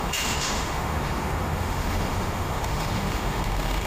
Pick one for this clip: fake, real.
fake